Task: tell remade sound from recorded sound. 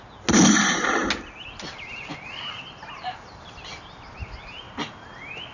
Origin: recorded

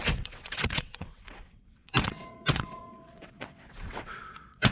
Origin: remade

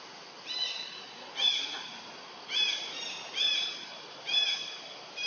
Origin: recorded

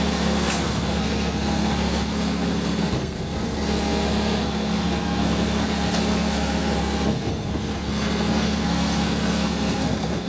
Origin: remade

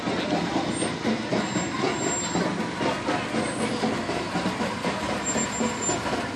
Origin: recorded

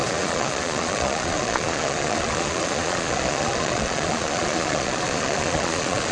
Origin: remade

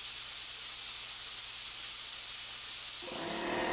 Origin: recorded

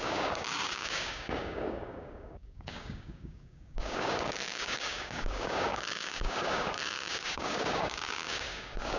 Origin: remade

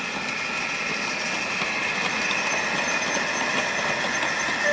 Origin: recorded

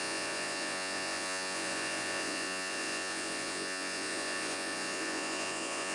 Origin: remade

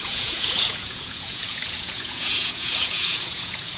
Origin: remade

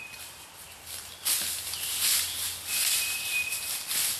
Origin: remade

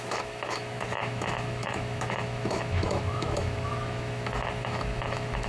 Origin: remade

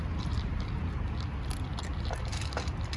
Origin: recorded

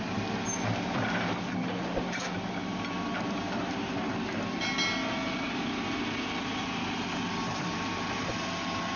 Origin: recorded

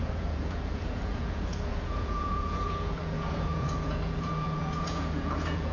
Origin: remade